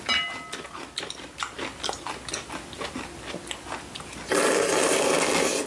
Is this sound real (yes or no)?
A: yes